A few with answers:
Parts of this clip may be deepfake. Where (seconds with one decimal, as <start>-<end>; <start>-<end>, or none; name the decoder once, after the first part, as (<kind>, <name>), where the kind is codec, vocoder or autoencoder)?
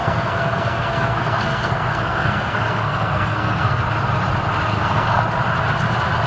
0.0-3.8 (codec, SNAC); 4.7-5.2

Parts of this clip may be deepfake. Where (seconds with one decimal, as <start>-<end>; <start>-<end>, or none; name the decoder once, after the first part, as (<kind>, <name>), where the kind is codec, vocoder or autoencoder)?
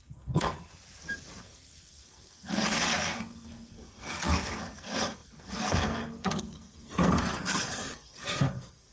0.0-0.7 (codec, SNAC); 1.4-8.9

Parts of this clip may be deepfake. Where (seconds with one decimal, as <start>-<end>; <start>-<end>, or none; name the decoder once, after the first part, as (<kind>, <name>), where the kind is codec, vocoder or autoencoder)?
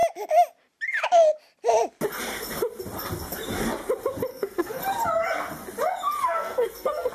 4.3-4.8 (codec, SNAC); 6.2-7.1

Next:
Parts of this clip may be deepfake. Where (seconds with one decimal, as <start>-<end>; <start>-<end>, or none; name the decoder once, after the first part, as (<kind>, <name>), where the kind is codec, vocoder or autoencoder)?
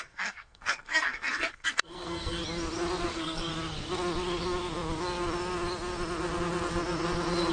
0.0-2.4 (codec, SNAC); 3.1-3.5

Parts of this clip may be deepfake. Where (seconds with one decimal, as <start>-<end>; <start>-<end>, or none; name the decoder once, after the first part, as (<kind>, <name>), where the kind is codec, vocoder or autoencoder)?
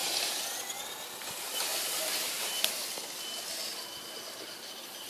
none